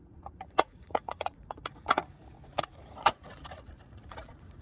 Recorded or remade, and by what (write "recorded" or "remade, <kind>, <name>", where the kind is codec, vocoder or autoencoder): remade, vocoder, Vocos